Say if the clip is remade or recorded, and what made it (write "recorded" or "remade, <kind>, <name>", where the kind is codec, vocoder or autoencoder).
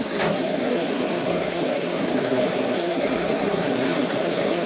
remade, codec, SNAC